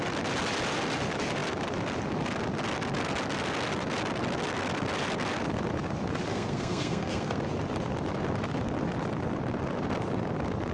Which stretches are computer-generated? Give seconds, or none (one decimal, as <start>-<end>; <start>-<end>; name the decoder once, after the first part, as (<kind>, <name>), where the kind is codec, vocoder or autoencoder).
6.3-7.4 (codec, SNAC)